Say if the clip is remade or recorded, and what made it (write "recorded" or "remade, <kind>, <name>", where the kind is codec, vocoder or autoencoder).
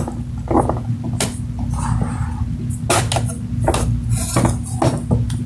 recorded